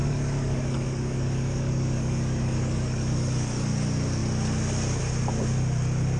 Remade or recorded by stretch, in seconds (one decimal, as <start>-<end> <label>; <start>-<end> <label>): 0.0-3.7 remade; 3.7-6.2 recorded